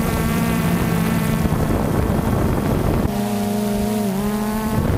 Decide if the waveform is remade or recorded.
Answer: remade